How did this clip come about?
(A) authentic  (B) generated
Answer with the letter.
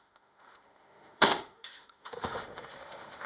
B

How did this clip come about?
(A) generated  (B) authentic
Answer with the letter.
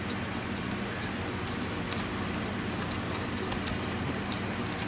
B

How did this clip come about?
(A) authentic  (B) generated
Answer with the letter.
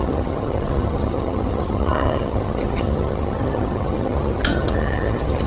B